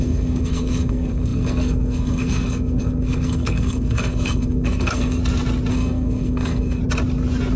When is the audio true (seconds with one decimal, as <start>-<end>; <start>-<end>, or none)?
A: 5.2-5.7; 6.8-7.6